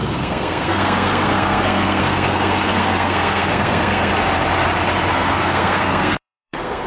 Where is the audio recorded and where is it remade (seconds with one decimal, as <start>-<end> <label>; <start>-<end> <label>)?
0.0-4.1 remade; 4.1-5.1 recorded; 5.1-6.9 remade